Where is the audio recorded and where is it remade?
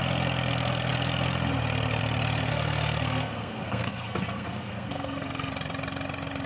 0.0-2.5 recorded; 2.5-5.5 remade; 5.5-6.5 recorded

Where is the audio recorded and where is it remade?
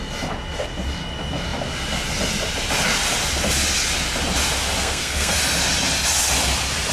0.0-4.8 recorded; 4.8-5.4 remade; 5.4-6.9 recorded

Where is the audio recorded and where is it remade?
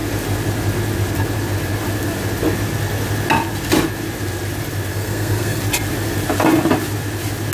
0.0-4.9 recorded; 4.9-5.6 remade; 5.6-7.5 recorded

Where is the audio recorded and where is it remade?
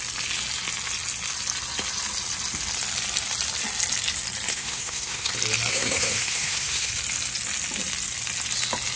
0.0-4.5 recorded; 4.5-5.3 remade; 5.3-5.7 recorded; 5.7-6.9 remade; 6.9-9.0 recorded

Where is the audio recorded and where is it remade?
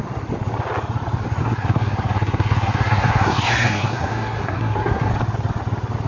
0.0-1.4 recorded; 1.4-5.1 remade; 5.1-6.1 recorded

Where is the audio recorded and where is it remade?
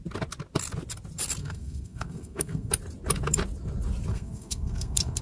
0.0-1.4 recorded; 1.4-2.7 remade; 2.7-4.1 recorded; 4.1-5.2 remade